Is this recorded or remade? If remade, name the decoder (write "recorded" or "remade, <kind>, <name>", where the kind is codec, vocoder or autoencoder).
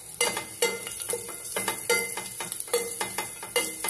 recorded